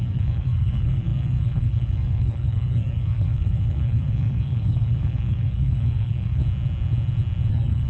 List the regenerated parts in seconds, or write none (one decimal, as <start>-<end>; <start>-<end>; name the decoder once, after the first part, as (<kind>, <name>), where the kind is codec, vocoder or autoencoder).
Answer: 0.0-6.4 (codec, SNAC); 7.5-7.9